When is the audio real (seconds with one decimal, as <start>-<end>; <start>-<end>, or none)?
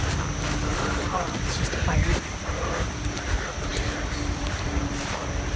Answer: 0.0-0.7; 1.4-2.1; 2.8-3.7; 4.8-5.6